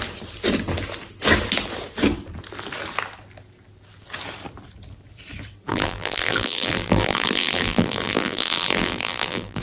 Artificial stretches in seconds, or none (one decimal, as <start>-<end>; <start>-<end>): 5.7-9.6